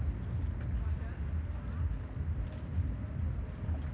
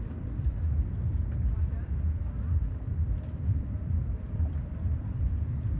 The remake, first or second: second